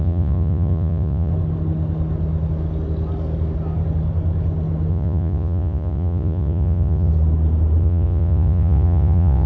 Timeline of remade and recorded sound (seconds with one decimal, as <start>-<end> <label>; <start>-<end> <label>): 0.0-1.3 remade; 1.3-4.9 recorded; 4.9-7.1 remade; 7.1-7.8 recorded; 7.8-9.5 remade